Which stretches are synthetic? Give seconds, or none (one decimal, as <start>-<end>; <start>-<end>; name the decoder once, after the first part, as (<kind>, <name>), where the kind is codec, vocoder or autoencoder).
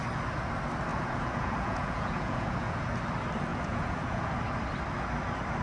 0.9-2.8 (vocoder, Vocos); 3.5-4.3